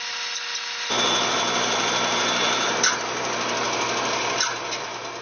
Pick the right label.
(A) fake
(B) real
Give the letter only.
B